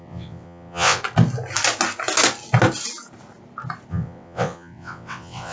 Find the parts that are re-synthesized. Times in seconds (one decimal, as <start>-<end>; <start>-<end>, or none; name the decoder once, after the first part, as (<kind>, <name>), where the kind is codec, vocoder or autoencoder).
0.0-1.0 (vocoder, WaveNeXt); 3.9-5.5